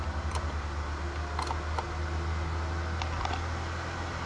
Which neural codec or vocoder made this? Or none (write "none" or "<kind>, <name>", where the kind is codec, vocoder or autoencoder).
none